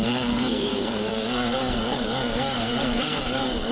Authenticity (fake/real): fake